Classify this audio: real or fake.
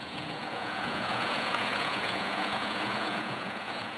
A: fake